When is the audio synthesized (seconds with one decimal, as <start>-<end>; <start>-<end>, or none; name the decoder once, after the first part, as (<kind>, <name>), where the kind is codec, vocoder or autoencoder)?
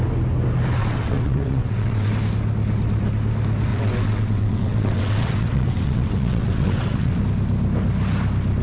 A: 0.8-2.1 (vocoder, WaveNeXt); 3.7-7.2